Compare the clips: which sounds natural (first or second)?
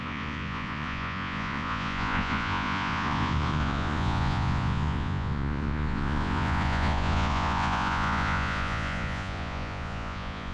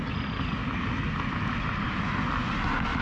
second